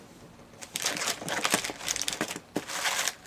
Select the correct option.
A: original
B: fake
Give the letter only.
A